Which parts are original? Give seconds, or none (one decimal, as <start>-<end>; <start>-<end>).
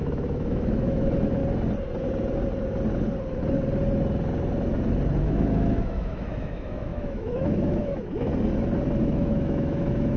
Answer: 1.4-5.2; 8.3-9.0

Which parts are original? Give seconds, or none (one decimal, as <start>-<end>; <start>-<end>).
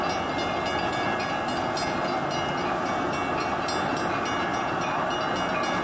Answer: 0.0-5.8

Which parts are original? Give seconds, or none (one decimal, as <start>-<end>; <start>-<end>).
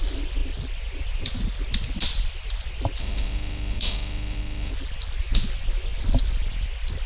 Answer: 0.0-3.0; 4.7-7.1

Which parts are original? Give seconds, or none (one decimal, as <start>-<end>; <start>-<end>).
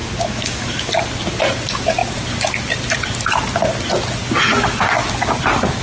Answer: 0.9-5.8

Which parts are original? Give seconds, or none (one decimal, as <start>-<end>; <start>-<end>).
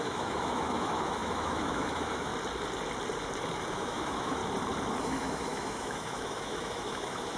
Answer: 2.3-3.7; 4.4-5.0